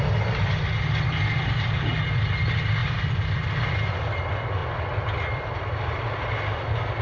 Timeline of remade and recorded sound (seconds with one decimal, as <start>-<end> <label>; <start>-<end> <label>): 0.0-7.0 recorded